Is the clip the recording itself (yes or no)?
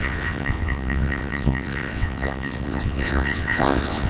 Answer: no